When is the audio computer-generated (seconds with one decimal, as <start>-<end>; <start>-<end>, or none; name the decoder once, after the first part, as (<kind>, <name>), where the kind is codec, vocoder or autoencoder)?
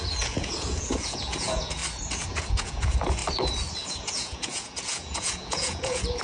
0.0-1.8 (vocoder, Vocos); 2.3-3.2; 3.9-6.2